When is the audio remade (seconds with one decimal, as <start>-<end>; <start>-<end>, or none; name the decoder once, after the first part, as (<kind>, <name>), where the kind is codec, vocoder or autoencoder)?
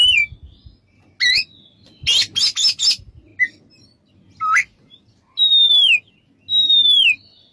none